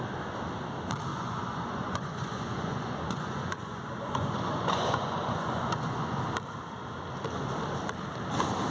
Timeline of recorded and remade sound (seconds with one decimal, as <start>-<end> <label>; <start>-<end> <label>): 0.0-1.1 recorded; 1.1-6.2 remade; 6.2-8.7 recorded

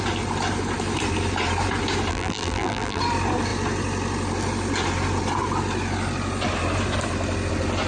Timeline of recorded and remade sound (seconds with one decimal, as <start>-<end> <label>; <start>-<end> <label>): 0.0-2.1 recorded; 2.1-3.0 remade; 3.0-7.9 recorded

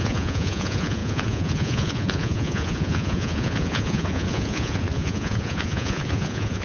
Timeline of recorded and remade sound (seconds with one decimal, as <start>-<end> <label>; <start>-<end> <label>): 0.0-6.6 remade

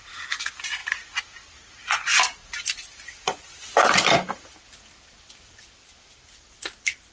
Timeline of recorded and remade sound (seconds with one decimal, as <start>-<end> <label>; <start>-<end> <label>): 0.0-7.1 recorded

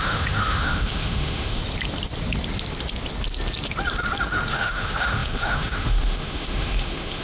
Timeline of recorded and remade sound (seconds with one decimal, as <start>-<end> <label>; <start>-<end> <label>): 0.0-1.6 remade; 1.6-4.5 recorded; 4.5-7.2 remade